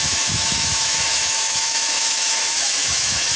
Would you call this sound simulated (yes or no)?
yes